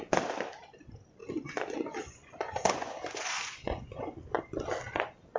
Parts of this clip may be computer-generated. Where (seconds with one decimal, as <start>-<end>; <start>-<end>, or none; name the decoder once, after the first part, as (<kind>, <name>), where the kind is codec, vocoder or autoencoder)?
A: 1.2-4.4 (vocoder, Vocos)